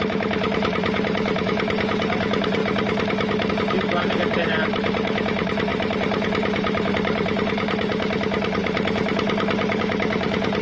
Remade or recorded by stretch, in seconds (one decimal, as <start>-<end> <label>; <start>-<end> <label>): 0.0-2.6 remade; 2.6-3.5 recorded; 3.5-10.6 remade